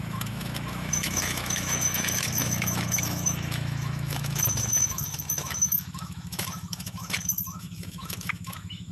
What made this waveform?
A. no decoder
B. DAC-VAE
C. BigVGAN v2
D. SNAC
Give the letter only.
B